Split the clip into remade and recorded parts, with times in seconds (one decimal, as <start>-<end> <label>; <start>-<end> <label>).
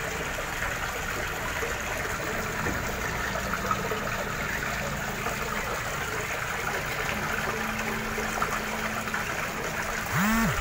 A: 0.0-10.6 recorded